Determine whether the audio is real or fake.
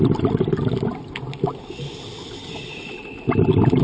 real